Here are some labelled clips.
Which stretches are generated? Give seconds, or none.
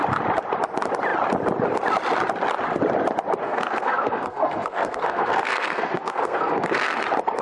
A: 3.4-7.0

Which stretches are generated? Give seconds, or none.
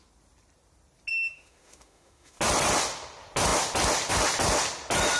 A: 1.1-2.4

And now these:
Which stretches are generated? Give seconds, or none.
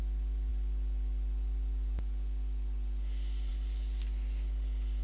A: none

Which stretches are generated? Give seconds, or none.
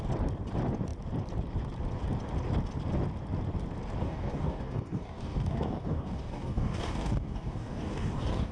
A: 4.0-8.5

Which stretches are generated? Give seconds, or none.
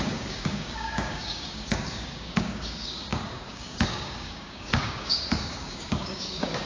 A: 0.0-6.7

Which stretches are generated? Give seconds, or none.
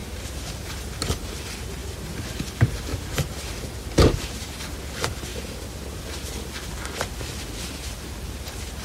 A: 0.0-0.6; 1.8-2.3